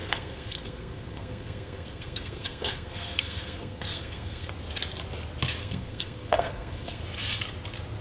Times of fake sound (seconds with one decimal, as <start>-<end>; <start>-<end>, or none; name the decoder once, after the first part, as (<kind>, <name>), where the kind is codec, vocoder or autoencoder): 0.0-4.5 (codec, SNAC); 5.6-7.0